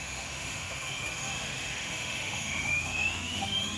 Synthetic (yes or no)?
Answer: yes